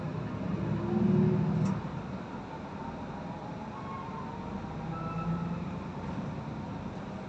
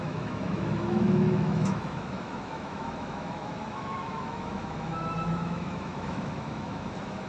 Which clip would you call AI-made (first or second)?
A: second